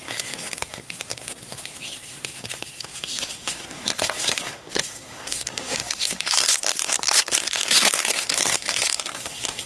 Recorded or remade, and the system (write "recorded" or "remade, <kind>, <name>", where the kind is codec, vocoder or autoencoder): remade, codec, SNAC